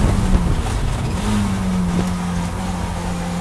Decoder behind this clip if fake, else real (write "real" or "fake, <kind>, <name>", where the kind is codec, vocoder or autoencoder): real